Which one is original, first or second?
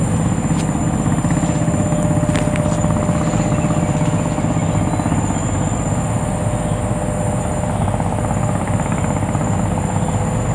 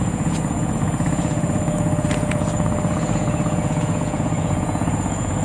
first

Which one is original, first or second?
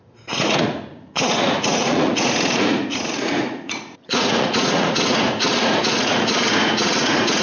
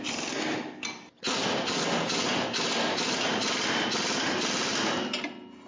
second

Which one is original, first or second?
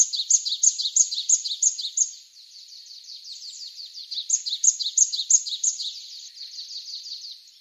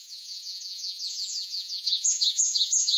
first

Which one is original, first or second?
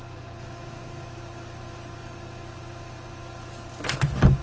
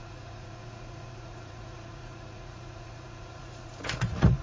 first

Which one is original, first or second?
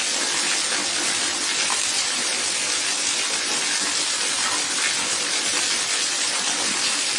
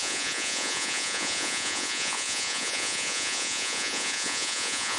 first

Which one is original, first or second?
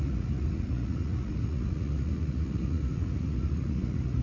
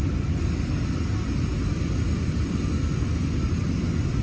second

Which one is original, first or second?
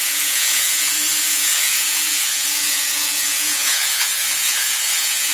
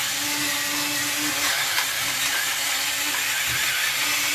second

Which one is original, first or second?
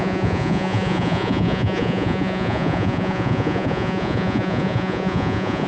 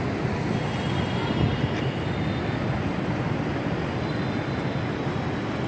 second